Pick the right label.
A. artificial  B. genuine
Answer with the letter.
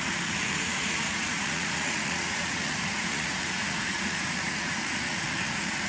A